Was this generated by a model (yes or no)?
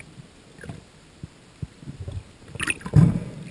no